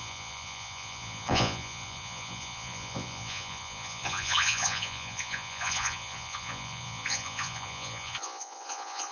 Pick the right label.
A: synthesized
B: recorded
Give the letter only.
A